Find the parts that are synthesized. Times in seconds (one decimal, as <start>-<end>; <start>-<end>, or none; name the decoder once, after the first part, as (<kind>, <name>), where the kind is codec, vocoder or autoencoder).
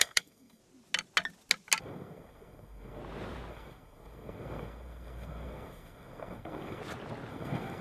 0.0-0.6 (codec, SNAC); 1.8-3.0; 3.5-6.8; 7.3-7.8